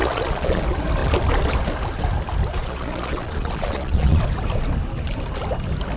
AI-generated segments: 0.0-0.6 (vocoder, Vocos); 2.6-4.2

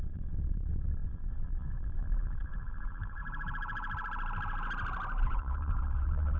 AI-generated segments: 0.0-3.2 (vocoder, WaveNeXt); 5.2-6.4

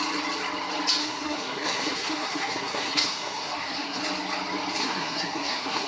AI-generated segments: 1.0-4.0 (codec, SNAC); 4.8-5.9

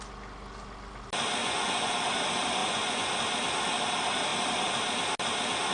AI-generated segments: 1.4-2.0 (vocoder, Vocos); 2.6-3.1

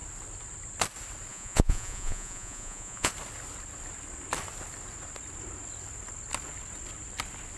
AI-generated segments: 1.3-3.1 (vocoder, Vocos)

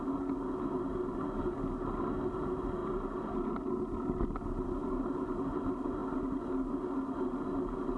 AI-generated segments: none